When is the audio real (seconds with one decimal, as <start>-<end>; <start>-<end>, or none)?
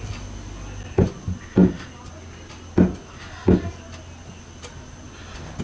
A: 0.0-5.6